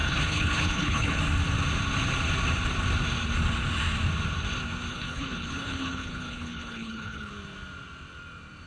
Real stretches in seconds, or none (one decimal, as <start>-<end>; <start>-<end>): 1.2-4.9; 7.3-8.7

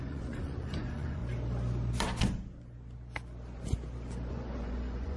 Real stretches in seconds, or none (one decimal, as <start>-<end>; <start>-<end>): 1.2-4.3

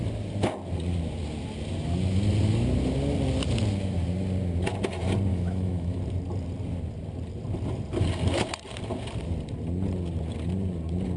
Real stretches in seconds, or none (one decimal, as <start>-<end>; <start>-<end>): 0.0-5.3; 6.0-11.2

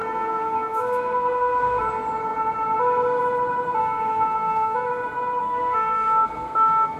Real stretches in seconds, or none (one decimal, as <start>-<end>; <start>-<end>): 1.8-3.8; 4.9-5.4

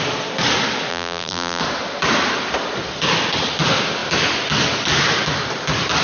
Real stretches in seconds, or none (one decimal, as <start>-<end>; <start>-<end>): 0.0-0.9; 1.6-6.0

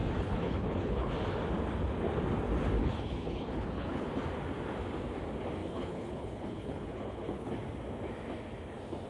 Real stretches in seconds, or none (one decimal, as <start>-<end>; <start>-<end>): 1.1-2.8; 4.1-5.6; 7.5-9.1

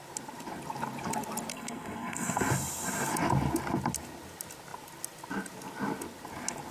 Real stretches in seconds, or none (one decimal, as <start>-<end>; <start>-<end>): 0.0-1.5; 2.5-6.7

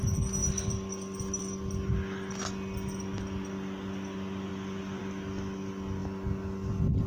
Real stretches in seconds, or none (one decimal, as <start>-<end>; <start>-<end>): 0.0-7.1